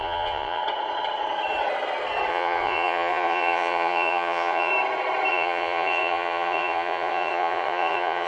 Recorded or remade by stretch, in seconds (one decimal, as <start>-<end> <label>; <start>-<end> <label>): 0.0-0.6 remade; 0.6-2.3 recorded; 2.3-4.7 remade; 4.7-5.3 recorded; 5.3-8.3 remade